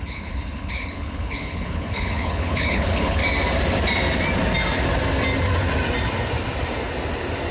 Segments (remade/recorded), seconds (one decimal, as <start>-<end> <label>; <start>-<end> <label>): 0.0-3.2 remade; 3.2-7.5 recorded